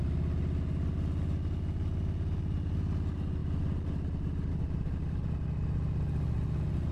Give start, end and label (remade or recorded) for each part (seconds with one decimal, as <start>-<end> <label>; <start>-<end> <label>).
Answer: 0.0-6.9 recorded